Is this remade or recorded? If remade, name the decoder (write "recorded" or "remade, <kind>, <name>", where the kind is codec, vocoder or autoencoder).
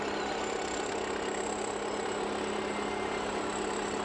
recorded